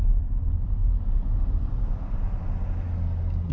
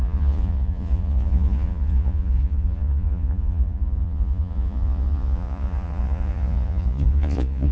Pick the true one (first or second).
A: first